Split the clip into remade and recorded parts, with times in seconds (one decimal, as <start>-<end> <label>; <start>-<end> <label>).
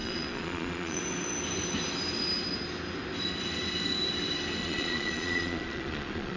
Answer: 0.0-1.0 remade; 1.0-4.6 recorded; 4.6-6.4 remade